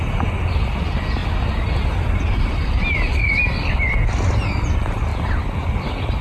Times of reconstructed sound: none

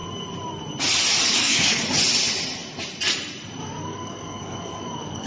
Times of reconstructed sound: 1.3-1.8 (codec, DAC); 3.6-5.3

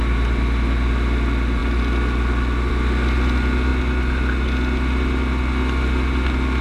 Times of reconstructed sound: none

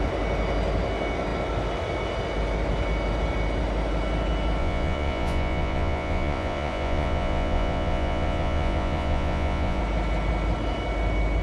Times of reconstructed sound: 4.6-9.8 (vocoder, Vocos)

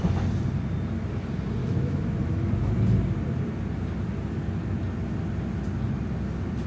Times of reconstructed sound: 1.6-2.5 (autoencoder, DAC-VAE)